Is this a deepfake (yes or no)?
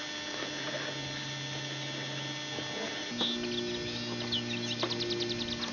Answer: no